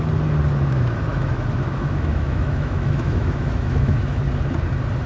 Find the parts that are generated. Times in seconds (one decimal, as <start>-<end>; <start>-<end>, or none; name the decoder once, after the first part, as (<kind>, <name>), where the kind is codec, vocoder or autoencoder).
1.1-4.2 (autoencoder, DAC-VAE)